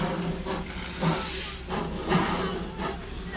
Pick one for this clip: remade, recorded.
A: recorded